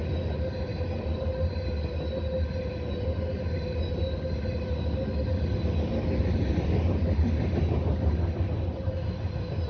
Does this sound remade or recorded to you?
recorded